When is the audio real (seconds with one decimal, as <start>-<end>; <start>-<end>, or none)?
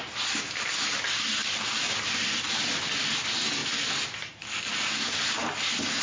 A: 0.0-1.4; 2.5-6.0